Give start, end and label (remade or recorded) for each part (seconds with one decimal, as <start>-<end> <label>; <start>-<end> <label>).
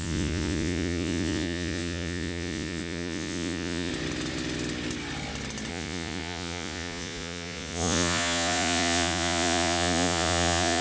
0.0-3.9 remade; 3.9-5.7 recorded; 5.7-10.8 remade